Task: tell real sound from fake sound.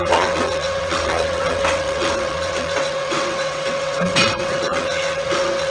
fake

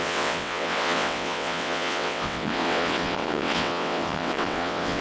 fake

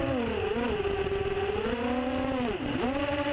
real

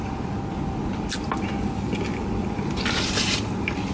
real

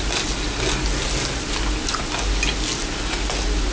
real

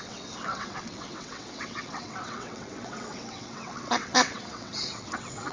fake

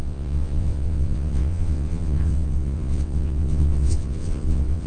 fake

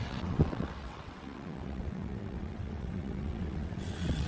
fake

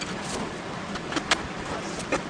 real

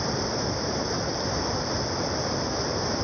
real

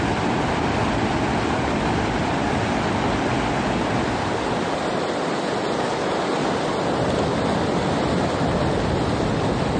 real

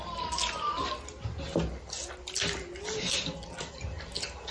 real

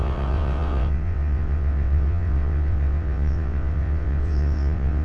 fake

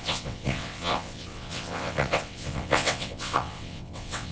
fake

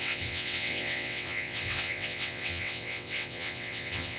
fake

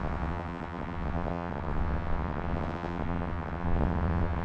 fake